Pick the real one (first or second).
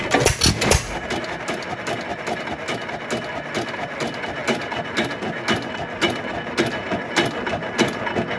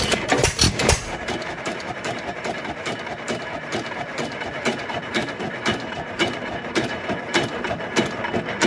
first